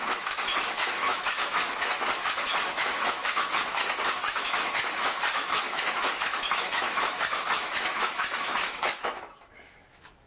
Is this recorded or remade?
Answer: remade